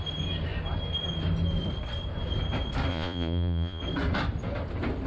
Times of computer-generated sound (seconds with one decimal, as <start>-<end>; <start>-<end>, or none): 2.9-3.8